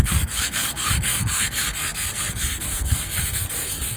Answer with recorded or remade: remade